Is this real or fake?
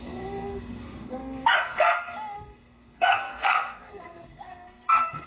fake